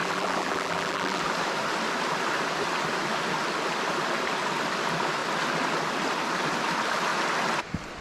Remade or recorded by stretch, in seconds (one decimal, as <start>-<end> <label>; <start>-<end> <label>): 0.0-1.2 remade; 1.2-8.0 recorded